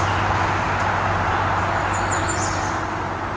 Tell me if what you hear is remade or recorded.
recorded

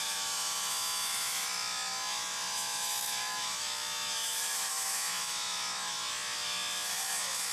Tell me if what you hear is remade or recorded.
remade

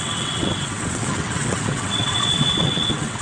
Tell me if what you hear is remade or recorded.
remade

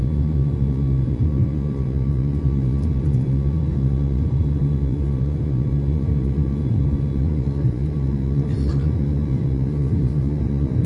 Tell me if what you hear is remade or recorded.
remade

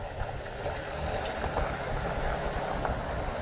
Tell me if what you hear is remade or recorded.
recorded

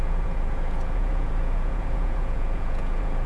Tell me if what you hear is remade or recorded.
remade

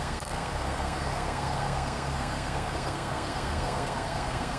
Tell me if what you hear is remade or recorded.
remade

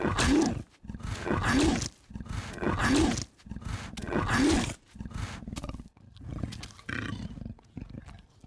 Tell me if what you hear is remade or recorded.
recorded